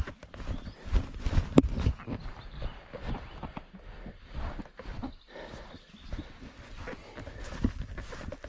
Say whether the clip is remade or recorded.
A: recorded